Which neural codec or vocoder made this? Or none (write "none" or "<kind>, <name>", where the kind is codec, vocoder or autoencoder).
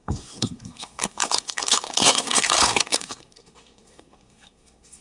codec, SNAC